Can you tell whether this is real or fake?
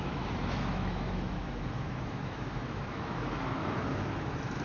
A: fake